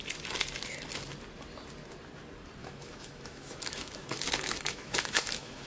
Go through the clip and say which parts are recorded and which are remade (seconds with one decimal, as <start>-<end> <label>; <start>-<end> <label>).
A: 0.0-2.6 recorded; 2.6-5.7 remade